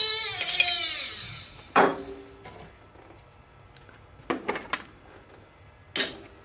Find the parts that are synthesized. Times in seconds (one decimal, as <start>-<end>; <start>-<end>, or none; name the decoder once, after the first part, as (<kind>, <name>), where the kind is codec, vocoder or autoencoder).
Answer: none